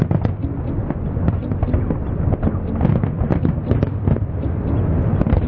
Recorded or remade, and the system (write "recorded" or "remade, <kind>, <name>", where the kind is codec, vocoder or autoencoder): recorded